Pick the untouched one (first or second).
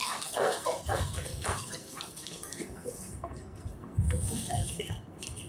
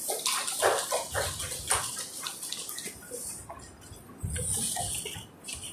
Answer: second